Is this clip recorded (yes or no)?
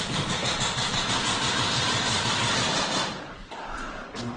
no